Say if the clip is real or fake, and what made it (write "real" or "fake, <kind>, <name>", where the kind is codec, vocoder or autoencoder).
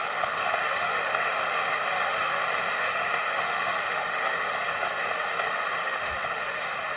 fake, autoencoder, DAC-VAE